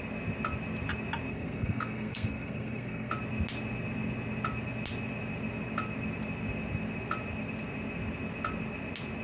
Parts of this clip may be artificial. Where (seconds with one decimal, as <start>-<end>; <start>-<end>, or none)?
1.3-3.1